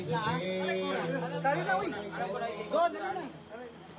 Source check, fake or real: real